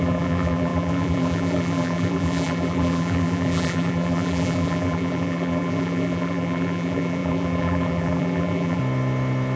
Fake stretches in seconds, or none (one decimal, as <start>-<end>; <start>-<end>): 0.0-8.8